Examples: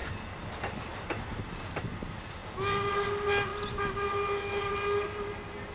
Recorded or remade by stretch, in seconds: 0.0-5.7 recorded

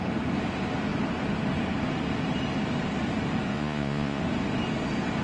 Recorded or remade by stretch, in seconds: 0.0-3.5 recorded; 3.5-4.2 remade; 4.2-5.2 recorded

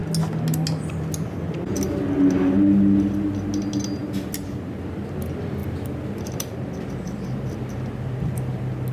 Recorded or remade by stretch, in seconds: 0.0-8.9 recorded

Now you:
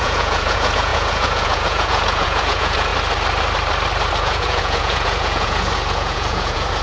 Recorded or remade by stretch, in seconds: 0.0-2.9 remade; 2.9-4.2 recorded; 4.2-6.8 remade

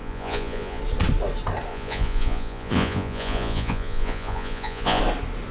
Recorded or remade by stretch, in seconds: 0.0-0.8 remade; 0.8-1.7 recorded; 1.7-5.0 remade; 5.0-5.5 recorded

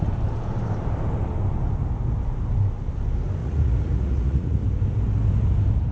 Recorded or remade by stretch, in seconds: 0.0-3.4 recorded; 3.4-4.6 remade; 4.6-5.9 recorded

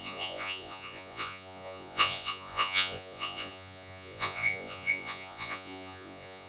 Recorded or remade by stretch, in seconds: 0.0-6.5 remade

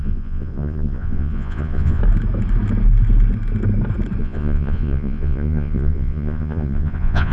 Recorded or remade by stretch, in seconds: 0.0-2.0 remade; 2.0-4.2 recorded; 4.2-7.3 remade